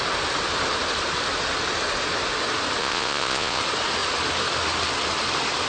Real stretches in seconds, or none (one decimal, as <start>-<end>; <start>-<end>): 0.0-2.8; 3.6-5.7